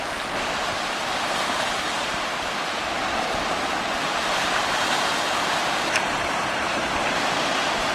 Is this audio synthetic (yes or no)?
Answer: yes